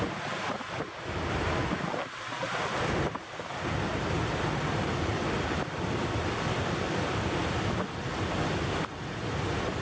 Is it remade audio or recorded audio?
recorded